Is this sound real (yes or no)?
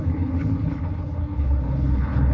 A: no